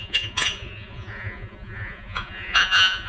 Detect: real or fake fake